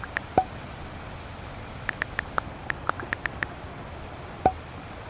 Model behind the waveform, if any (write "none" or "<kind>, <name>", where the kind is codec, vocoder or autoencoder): none